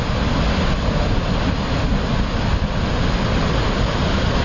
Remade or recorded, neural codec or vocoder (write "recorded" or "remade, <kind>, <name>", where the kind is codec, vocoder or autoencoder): recorded